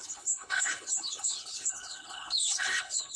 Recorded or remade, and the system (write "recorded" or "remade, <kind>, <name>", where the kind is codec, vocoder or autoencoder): remade, codec, HILCodec